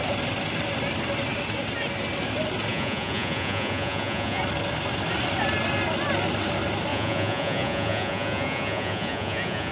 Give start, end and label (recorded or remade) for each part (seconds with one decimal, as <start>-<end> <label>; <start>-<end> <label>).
0.0-2.7 recorded; 2.7-4.4 remade; 4.4-6.9 recorded; 6.9-9.7 remade